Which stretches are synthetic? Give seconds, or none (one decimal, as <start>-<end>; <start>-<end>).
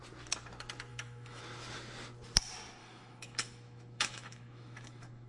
0.9-1.4; 2.8-5.3